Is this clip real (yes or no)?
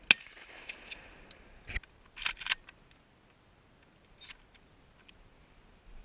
yes